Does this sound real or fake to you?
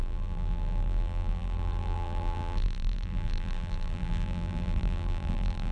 fake